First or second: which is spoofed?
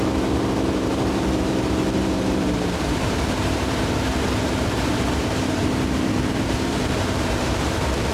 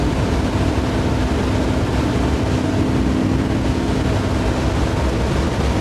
first